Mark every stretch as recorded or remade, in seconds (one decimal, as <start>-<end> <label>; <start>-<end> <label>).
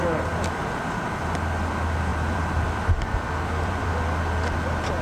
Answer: 0.0-2.1 recorded; 2.1-3.9 remade; 3.9-5.0 recorded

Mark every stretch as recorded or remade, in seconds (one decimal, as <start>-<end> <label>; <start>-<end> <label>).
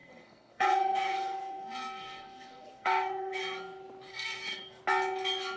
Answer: 0.0-3.4 remade; 3.4-4.1 recorded; 4.1-4.8 remade; 4.8-5.6 recorded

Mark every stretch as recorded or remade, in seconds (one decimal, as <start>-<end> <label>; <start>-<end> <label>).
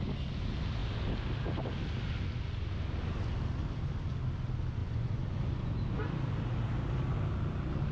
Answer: 0.0-4.8 recorded; 4.8-5.7 remade; 5.7-7.9 recorded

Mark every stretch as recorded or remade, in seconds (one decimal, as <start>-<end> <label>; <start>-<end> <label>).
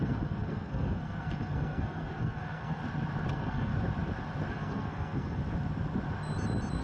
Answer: 0.0-2.8 remade; 2.8-3.3 recorded; 3.3-3.7 remade; 3.7-4.5 recorded; 4.5-5.4 remade; 5.4-6.8 recorded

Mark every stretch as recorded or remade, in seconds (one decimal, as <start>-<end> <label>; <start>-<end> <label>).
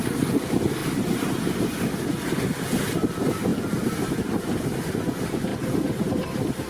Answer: 0.0-0.8 recorded; 0.8-1.4 remade; 1.4-3.5 recorded; 3.5-4.3 remade; 4.3-5.5 recorded; 5.5-6.7 remade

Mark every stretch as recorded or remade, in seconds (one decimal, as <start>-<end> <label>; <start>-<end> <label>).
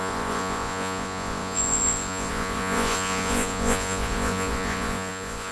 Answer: 0.0-5.5 remade